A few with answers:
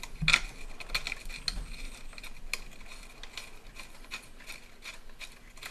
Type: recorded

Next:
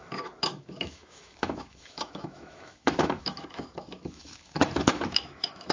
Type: remade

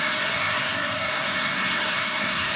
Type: remade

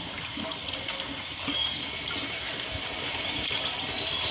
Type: recorded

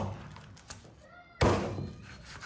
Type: recorded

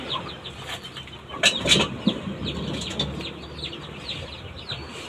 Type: recorded